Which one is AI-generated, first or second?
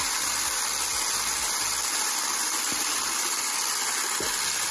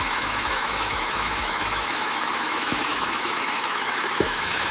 second